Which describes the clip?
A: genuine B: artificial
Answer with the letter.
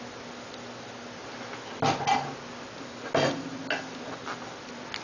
A